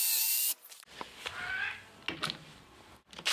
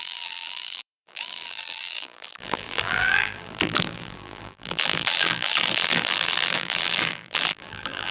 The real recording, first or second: first